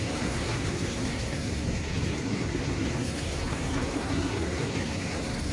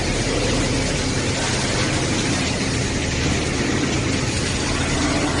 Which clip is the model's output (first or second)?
first